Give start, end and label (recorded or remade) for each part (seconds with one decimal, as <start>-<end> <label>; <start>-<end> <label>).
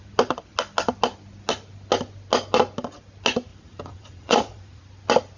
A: 0.0-3.5 recorded; 3.5-4.8 remade; 4.8-5.4 recorded